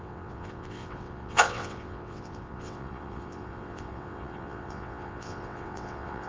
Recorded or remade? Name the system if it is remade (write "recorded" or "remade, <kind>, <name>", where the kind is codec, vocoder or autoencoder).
remade, vocoder, WaveNeXt